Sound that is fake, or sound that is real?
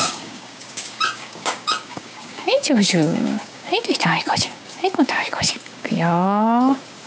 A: fake